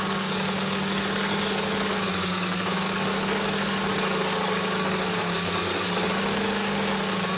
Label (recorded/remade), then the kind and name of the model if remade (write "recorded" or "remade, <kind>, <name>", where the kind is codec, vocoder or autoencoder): remade, codec, DAC